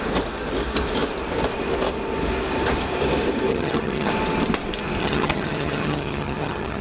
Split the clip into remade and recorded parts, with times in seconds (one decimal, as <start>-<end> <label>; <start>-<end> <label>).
0.0-3.5 recorded; 3.5-4.1 remade; 4.1-5.0 recorded; 5.0-6.8 remade